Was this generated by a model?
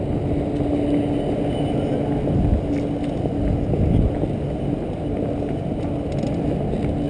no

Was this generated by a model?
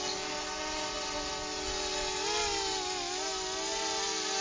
no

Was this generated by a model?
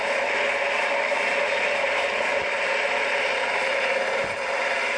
no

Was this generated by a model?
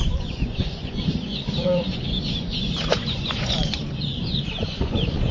yes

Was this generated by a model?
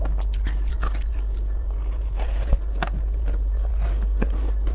no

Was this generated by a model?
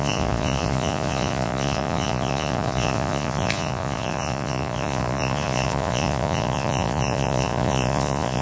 yes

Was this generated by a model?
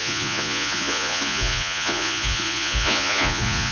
yes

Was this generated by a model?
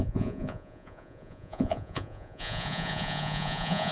yes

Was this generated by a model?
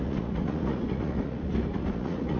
yes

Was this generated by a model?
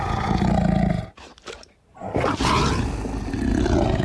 no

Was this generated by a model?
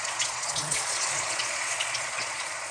yes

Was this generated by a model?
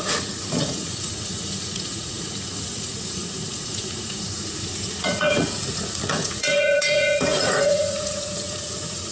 yes